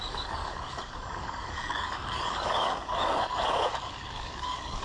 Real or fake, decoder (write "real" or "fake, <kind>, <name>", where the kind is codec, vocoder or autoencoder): fake, codec, DAC